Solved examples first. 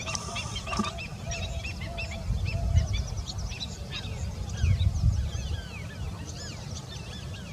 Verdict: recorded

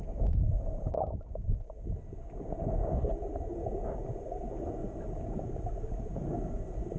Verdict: recorded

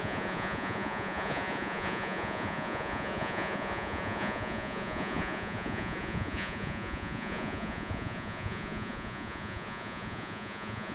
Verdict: remade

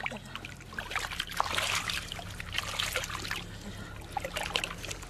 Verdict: recorded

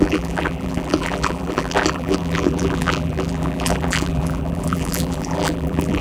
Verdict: remade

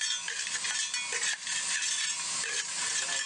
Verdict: recorded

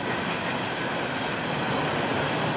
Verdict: recorded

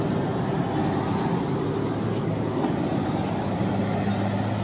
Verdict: recorded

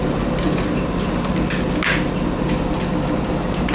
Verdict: recorded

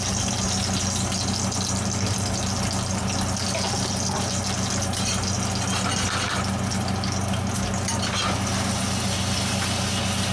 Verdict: recorded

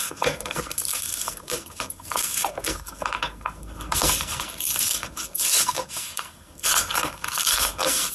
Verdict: remade